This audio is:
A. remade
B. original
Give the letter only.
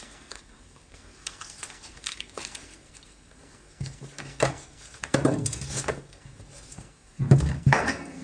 A